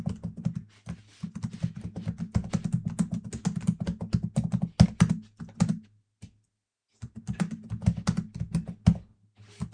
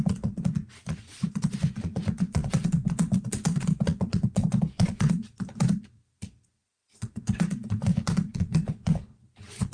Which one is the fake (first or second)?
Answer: second